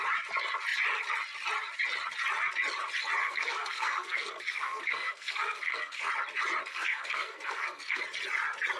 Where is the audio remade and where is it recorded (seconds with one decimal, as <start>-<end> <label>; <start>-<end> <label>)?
0.0-3.2 recorded; 3.2-6.1 remade; 6.1-6.7 recorded; 6.7-8.0 remade; 8.0-8.8 recorded